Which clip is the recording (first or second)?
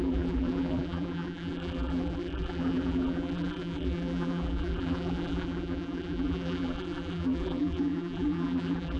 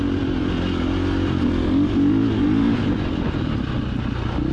second